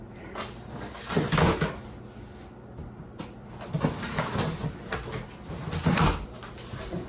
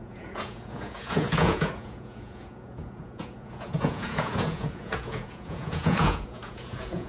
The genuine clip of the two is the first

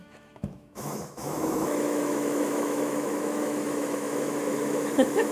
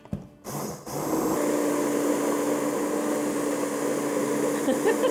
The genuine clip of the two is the second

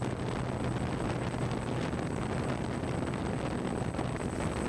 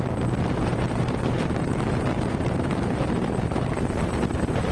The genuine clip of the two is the first